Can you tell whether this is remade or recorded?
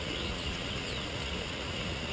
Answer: remade